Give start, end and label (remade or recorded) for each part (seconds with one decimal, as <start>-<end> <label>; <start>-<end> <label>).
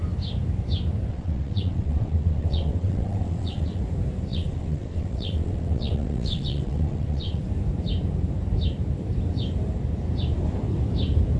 0.0-1.1 recorded; 1.1-3.8 remade; 3.8-4.3 recorded; 4.3-7.4 remade; 7.4-11.4 recorded